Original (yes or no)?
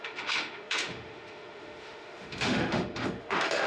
no